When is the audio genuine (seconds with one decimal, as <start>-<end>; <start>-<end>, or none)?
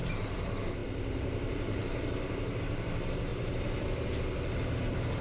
3.3-5.2